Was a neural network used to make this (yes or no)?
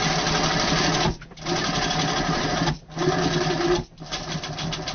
no